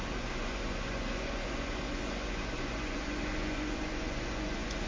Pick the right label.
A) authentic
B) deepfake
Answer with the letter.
B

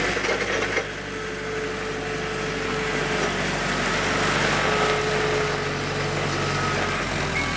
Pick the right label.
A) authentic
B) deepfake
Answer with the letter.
A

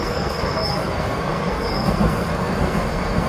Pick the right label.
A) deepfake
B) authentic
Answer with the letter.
A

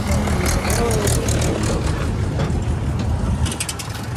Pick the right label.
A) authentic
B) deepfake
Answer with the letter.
A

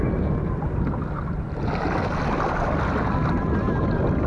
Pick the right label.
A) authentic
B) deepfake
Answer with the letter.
A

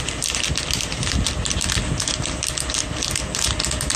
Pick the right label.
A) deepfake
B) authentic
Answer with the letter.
B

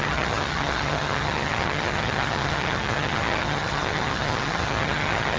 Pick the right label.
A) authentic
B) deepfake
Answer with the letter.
B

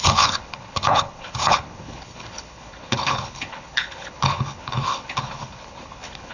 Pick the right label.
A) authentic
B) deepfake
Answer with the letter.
B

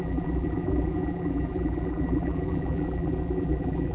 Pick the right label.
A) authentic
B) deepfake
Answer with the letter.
B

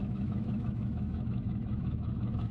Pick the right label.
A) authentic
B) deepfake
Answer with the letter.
B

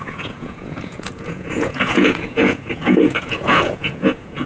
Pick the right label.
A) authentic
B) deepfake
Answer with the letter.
B